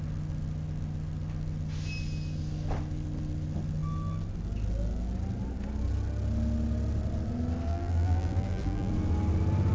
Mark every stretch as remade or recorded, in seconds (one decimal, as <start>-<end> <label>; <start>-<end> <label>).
0.0-7.7 recorded; 7.7-8.9 remade; 8.9-9.7 recorded